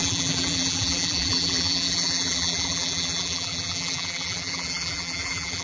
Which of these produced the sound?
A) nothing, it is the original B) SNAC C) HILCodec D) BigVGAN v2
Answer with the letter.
D